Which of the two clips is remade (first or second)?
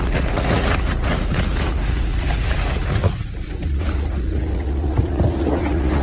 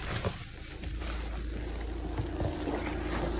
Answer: first